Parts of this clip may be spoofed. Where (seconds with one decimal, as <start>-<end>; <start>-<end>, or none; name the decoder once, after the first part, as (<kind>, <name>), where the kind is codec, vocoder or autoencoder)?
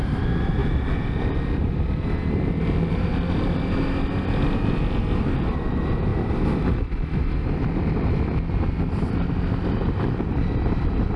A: none